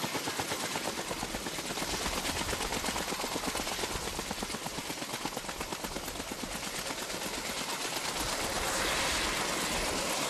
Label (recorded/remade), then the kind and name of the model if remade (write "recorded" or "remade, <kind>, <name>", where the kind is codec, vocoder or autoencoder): recorded